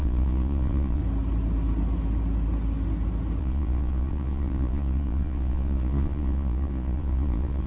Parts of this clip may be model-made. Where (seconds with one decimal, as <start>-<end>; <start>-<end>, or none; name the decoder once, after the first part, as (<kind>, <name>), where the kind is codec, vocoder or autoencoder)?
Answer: 0.0-1.0 (vocoder, Vocos); 3.4-7.7